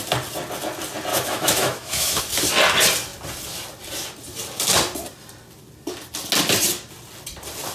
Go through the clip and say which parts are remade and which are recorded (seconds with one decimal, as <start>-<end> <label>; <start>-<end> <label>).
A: 0.0-1.1 recorded; 1.1-2.2 remade; 2.2-7.7 recorded